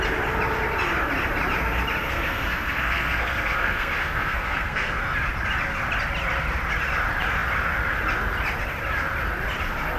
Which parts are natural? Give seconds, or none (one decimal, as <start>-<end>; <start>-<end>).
0.0-2.0; 5.0-10.0